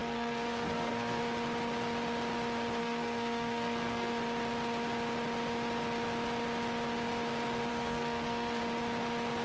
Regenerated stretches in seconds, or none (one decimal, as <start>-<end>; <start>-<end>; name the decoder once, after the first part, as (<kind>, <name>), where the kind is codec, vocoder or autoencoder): 0.0-1.2 (codec, SNAC); 2.8-4.1; 7.7-8.6